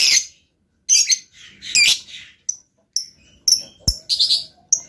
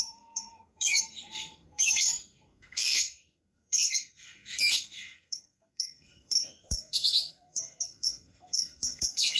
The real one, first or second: first